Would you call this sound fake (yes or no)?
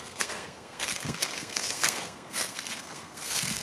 yes